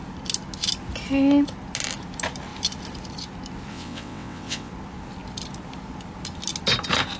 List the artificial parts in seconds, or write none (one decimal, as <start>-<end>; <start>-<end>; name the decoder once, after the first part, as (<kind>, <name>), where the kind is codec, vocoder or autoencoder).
3.7-4.7 (vocoder, WaveNeXt)